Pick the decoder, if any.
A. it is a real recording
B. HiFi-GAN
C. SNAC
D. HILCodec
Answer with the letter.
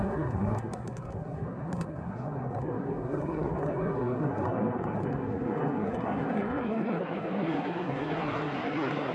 C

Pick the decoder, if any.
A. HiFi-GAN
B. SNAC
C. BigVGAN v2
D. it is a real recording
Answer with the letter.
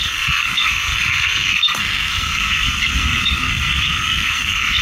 B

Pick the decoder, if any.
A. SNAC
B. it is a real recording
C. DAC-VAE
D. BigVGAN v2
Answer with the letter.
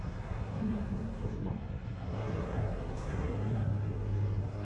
A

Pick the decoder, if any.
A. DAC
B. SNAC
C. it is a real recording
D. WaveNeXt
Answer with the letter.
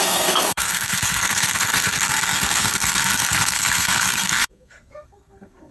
B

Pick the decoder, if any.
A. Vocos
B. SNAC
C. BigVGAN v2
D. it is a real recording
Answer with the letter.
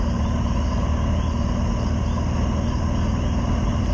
D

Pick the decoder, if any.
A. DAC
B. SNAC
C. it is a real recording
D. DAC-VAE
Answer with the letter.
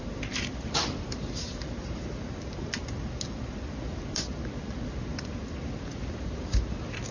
C